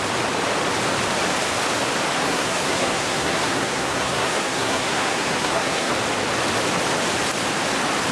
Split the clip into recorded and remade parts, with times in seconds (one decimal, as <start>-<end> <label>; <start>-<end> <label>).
0.0-2.2 recorded; 2.2-5.9 remade; 5.9-8.1 recorded